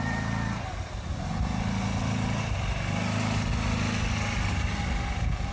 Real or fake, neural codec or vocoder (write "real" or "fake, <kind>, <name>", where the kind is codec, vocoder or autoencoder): real